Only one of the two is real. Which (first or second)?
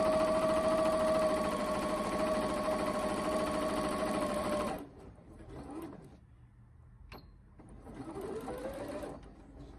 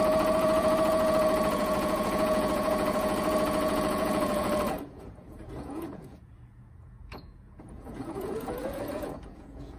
first